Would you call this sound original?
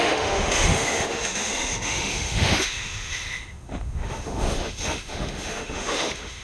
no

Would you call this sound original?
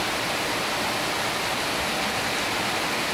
yes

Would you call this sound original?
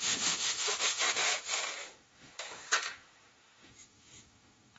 no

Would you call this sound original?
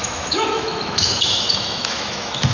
no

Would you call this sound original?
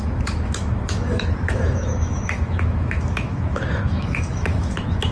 no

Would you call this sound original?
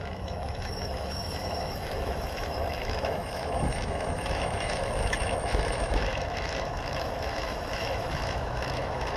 no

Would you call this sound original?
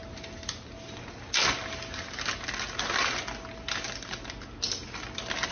yes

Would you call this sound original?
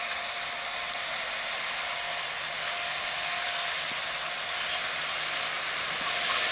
yes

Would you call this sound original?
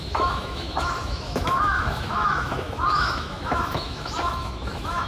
no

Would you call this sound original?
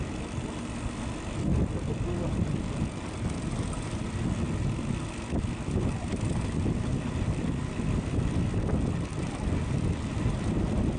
yes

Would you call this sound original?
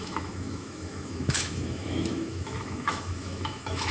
no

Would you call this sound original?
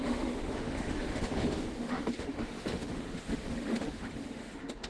no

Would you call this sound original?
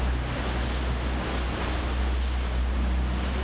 yes